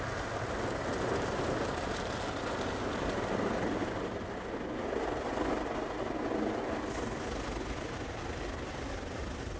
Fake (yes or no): no